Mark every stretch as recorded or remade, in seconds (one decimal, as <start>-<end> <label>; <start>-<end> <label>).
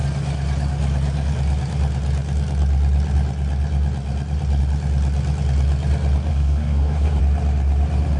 0.0-6.3 recorded; 6.3-7.2 remade; 7.2-8.2 recorded